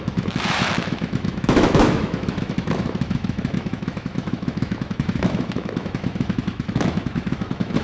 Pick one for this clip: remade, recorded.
remade